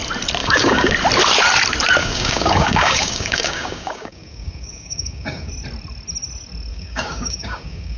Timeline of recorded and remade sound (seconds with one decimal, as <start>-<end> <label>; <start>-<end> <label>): 0.0-0.4 recorded; 0.4-0.9 remade; 0.9-2.0 recorded; 2.0-5.5 remade; 5.5-6.7 recorded; 6.7-8.0 remade